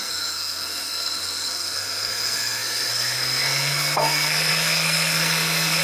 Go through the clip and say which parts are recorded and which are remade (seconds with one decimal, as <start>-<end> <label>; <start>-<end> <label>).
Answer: 0.0-5.8 remade